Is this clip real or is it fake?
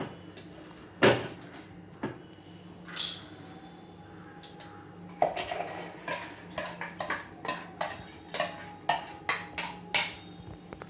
real